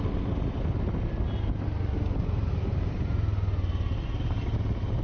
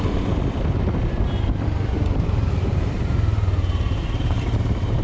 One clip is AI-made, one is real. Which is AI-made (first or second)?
second